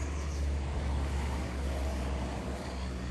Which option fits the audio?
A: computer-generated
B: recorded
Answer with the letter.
A